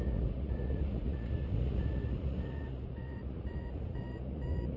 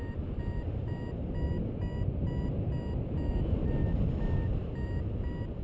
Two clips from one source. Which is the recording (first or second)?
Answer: second